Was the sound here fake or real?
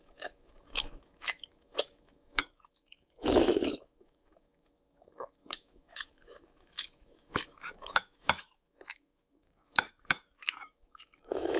fake